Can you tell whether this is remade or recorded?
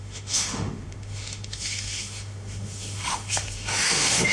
remade